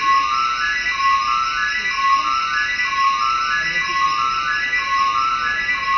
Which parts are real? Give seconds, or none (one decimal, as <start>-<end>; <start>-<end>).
0.0-6.0